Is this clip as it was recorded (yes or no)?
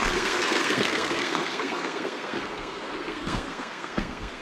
no